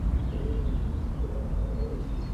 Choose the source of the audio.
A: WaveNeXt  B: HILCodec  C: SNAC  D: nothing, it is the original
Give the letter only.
D